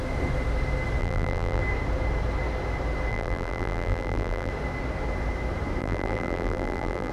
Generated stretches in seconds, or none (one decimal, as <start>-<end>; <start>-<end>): 1.0-1.6; 3.1-4.5; 5.8-7.1